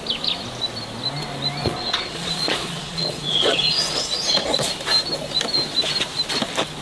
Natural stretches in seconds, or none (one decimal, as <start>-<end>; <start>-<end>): 0.0-1.6; 4.7-6.8